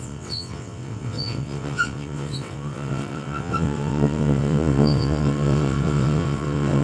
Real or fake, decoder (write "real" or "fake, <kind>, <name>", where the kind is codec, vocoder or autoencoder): fake, vocoder, WaveNeXt